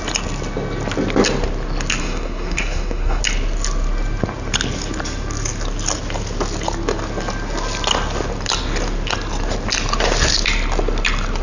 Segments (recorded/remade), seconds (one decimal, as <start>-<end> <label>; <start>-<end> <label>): 0.0-2.0 recorded; 2.0-3.2 remade; 3.2-11.4 recorded